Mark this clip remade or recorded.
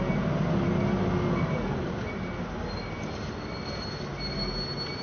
recorded